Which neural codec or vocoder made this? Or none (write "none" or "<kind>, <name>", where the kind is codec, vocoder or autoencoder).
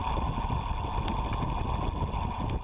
none